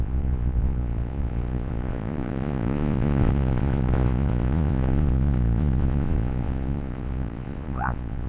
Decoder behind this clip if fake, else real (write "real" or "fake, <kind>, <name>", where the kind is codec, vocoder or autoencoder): fake, vocoder, Vocos